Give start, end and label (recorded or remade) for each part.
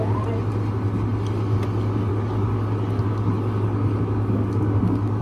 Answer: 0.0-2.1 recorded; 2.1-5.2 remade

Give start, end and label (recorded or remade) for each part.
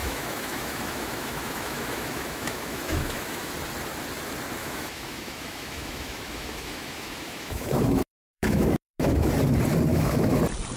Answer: 0.0-3.5 remade; 3.5-4.6 recorded; 4.6-9.3 remade; 9.3-9.9 recorded; 9.9-10.4 remade; 10.4-10.8 recorded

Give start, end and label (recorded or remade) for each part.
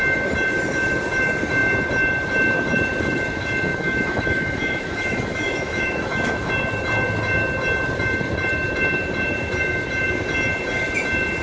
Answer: 0.0-3.7 recorded; 3.7-6.5 remade; 6.5-11.4 recorded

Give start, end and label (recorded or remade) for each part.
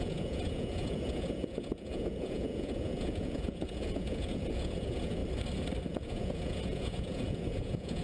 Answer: 0.0-5.2 remade; 5.2-5.9 recorded; 5.9-8.0 remade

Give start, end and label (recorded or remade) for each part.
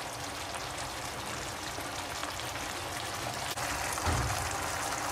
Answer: 0.0-5.1 recorded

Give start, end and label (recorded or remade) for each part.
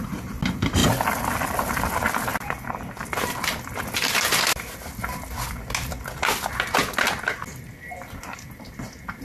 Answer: 0.0-9.2 recorded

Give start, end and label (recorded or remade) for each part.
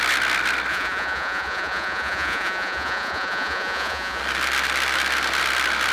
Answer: 0.0-0.7 recorded; 0.7-4.2 remade; 4.2-5.9 recorded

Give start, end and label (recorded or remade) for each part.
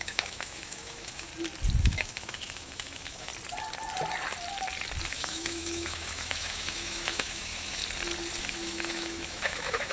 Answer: 0.0-1.3 remade; 1.3-1.8 recorded; 1.8-3.3 remade; 3.3-5.1 recorded; 5.1-7.8 remade; 7.8-8.4 recorded; 8.4-9.9 remade